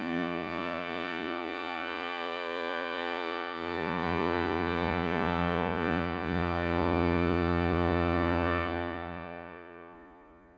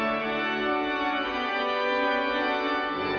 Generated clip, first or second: first